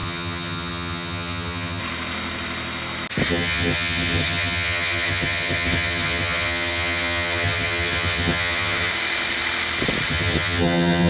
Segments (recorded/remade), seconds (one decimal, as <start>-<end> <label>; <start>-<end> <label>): 0.0-1.8 remade; 1.8-3.3 recorded; 3.3-8.9 remade; 8.9-10.1 recorded; 10.1-11.1 remade

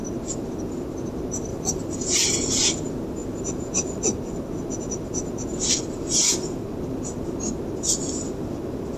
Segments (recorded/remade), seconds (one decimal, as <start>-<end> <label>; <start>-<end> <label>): 0.0-1.5 recorded; 1.5-2.5 remade; 2.5-9.0 recorded

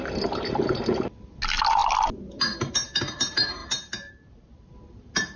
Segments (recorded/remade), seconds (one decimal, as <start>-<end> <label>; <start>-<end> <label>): 0.0-5.4 recorded

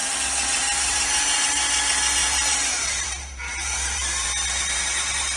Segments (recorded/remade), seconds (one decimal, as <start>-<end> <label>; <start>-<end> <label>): 0.0-2.2 recorded; 2.2-5.4 remade

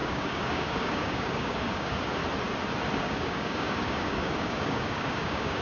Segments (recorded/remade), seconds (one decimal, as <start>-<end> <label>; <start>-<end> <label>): 0.0-2.2 remade; 2.2-3.0 recorded; 3.0-5.6 remade